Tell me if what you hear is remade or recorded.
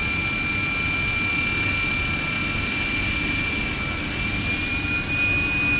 recorded